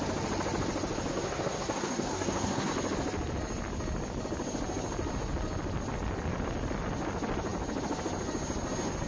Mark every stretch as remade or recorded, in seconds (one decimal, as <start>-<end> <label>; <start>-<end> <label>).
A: 0.0-1.1 recorded; 1.1-2.7 remade; 2.7-9.1 recorded